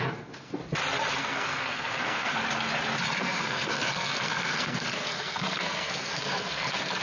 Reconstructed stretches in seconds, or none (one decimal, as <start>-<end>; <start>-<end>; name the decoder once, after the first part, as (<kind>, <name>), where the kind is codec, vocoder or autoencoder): 0.0-0.6 (codec, SNAC); 1.2-2.4; 3.2-7.0